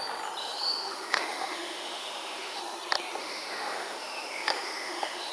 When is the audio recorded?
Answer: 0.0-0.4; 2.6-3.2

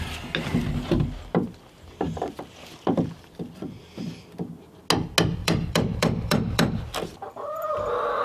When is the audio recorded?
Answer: 0.0-5.4; 6.8-8.2

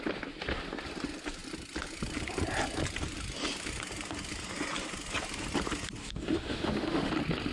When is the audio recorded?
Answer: 0.0-6.0; 7.1-7.5

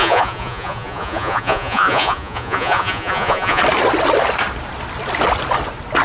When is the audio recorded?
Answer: 3.6-6.0